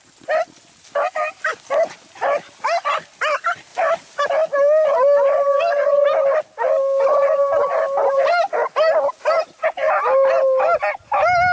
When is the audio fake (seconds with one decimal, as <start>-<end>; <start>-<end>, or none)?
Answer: none